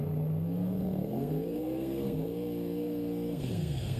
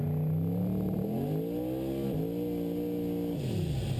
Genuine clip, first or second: second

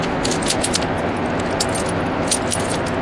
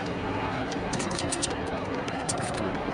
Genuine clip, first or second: first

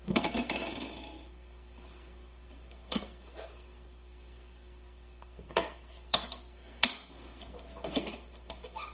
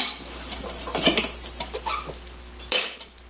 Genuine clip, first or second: second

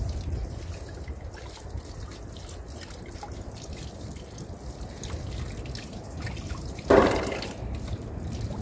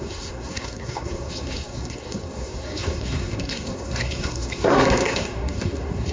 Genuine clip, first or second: first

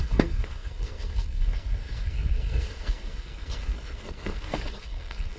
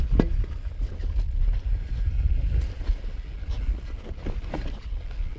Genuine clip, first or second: second